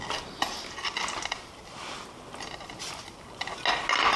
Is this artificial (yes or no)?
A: no